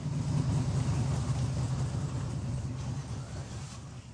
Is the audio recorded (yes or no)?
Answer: yes